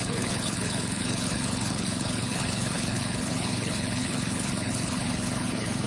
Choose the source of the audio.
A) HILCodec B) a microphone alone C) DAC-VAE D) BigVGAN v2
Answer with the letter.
A